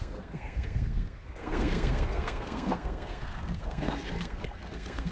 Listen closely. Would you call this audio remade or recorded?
remade